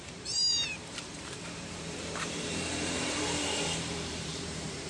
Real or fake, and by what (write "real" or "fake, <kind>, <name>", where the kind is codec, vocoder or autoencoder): fake, vocoder, BigVGAN v2